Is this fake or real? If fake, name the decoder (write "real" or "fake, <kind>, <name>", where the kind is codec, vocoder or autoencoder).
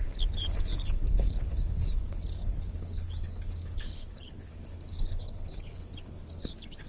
fake, codec, HILCodec